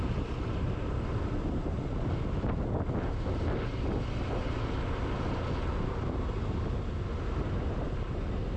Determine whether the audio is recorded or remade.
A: recorded